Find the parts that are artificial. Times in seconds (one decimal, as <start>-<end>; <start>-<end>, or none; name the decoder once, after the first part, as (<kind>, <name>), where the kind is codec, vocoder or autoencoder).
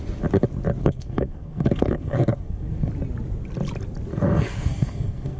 0.8-2.9 (codec, SNAC); 4.1-5.4